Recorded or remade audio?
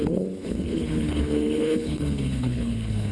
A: remade